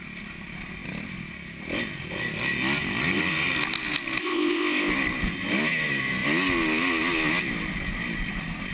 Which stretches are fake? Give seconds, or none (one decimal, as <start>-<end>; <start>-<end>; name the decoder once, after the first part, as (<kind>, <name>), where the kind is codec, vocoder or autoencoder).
4.2-4.9 (codec, ZipCodec)